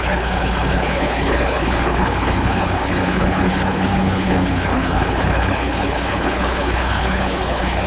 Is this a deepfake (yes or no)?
yes